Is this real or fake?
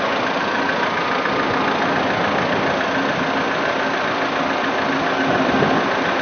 real